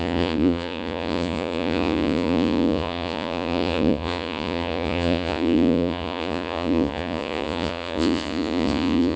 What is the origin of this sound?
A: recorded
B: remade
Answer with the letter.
B